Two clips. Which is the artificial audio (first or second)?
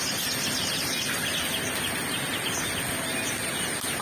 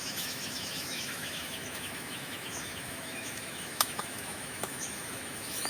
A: second